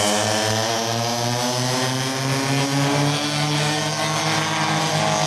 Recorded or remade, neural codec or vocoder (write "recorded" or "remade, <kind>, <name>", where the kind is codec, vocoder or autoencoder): recorded